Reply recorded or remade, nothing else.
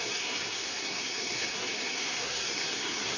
remade